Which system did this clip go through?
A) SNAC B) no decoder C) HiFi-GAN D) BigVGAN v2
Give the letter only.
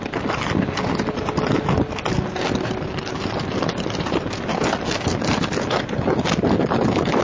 B